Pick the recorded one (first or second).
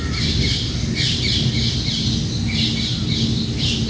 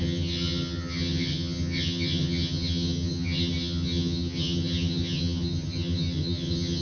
first